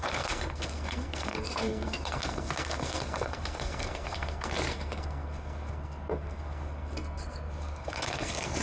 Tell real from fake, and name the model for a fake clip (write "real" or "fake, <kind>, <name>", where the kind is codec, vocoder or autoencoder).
fake, codec, SNAC